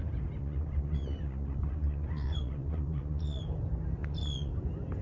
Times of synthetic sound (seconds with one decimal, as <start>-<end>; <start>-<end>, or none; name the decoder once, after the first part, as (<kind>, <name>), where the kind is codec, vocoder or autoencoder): 0.4-3.4 (vocoder, Vocos); 4.0-4.5